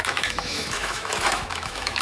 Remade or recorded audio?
remade